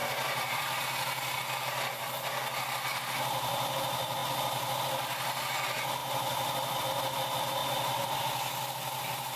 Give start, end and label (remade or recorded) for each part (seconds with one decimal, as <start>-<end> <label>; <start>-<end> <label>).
0.0-0.8 remade; 0.8-7.6 recorded; 7.6-8.2 remade; 8.2-9.4 recorded